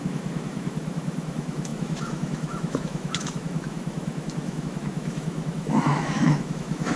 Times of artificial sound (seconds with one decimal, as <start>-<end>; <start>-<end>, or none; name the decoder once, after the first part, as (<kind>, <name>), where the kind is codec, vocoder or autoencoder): 0.0-7.0 (autoencoder, DAC-VAE)